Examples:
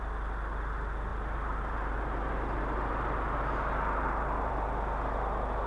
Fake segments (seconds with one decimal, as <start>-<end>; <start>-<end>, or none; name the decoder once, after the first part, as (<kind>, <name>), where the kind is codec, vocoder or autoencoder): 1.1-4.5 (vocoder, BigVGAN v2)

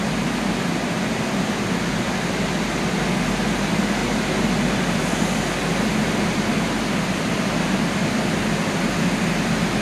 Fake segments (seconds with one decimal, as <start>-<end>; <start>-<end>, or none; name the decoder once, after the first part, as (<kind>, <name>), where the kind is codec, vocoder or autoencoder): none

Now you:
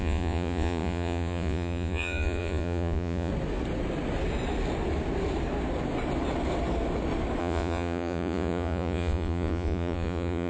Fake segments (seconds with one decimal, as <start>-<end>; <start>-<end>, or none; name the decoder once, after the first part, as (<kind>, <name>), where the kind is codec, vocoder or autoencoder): 0.0-3.3 (vocoder, Vocos); 7.4-10.5

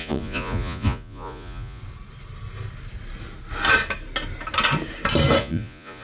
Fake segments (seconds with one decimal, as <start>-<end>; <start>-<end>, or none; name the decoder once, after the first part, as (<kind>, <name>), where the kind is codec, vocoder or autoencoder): 0.0-1.8 (vocoder, Vocos); 5.4-6.0